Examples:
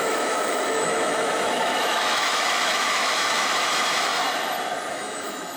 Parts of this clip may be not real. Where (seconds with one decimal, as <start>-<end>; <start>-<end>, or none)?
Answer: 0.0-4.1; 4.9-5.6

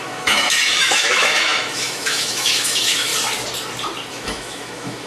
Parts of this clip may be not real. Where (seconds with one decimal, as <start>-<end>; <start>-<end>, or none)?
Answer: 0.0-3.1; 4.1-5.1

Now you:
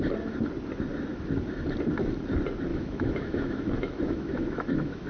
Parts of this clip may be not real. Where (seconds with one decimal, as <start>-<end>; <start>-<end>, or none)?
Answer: 2.7-5.1